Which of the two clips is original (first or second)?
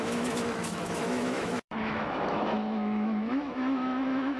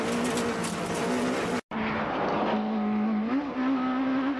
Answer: second